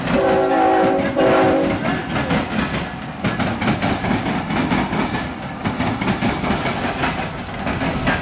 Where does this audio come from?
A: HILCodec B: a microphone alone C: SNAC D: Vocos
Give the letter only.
B